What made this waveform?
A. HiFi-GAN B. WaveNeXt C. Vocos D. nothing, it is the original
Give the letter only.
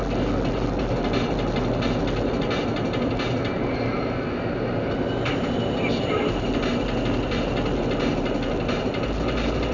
D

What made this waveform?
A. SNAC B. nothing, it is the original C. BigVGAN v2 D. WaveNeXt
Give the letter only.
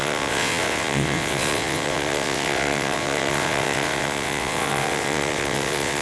D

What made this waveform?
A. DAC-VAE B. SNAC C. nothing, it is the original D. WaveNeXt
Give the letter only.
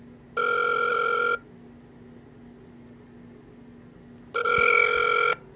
C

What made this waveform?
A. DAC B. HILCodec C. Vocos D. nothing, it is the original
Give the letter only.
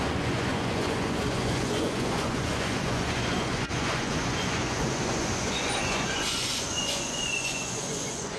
C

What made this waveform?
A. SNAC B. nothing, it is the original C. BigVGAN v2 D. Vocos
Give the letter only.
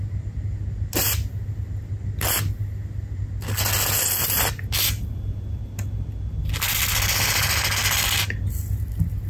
B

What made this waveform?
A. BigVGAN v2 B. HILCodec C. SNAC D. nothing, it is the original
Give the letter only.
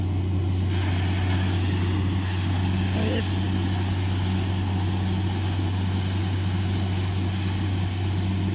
D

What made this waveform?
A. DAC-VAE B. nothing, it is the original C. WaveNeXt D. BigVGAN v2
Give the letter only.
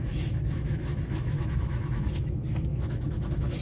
A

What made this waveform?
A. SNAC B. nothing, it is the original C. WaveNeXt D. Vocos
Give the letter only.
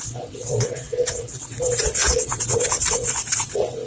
C